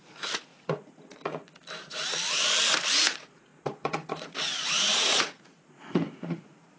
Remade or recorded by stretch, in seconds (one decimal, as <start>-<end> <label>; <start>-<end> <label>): 0.0-1.6 remade; 1.6-3.0 recorded; 3.0-6.8 remade